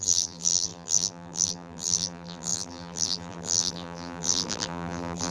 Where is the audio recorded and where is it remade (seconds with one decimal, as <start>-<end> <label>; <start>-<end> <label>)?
0.0-5.3 remade